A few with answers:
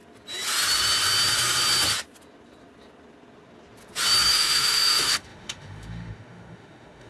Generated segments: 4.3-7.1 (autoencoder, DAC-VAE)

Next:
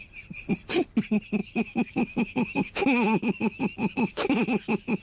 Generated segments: 1.4-4.4 (autoencoder, DAC-VAE)

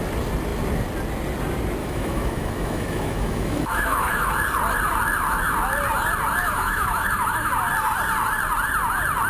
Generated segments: 1.8-4.3 (autoencoder, DAC-VAE); 6.4-7.5

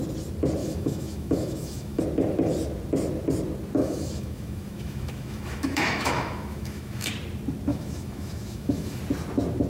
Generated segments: 0.6-2.0 (autoencoder, DAC-VAE); 3.8-7.1; 7.7-9.0

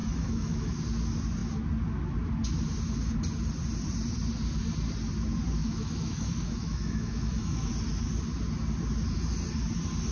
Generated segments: 0.0-0.7 (autoencoder, DAC-VAE); 5.6-7.7

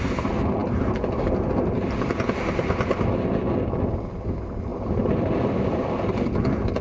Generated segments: none

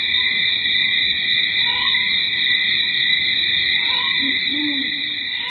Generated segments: none